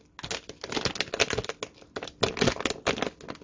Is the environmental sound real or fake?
real